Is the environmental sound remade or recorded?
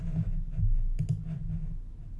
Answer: recorded